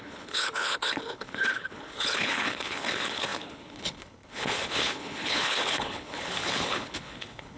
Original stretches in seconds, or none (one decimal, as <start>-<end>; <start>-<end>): none